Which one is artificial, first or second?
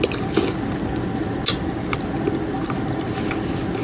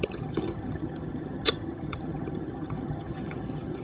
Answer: second